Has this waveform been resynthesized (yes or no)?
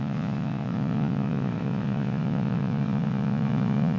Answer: yes